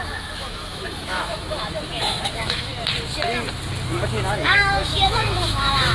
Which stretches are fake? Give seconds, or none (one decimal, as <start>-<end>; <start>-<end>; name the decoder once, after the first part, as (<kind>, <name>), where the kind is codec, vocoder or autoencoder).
0.0-2.7 (autoencoder, DAC-VAE); 4.3-5.9

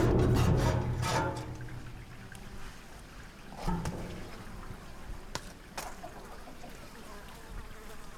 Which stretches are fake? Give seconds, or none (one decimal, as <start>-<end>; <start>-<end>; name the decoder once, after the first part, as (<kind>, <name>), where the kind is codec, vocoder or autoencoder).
none